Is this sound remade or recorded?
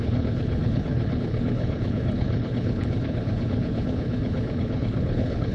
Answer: remade